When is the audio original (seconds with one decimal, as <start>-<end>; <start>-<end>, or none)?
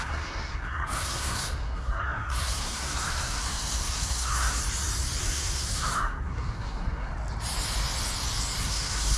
4.6-5.2; 7.1-8.6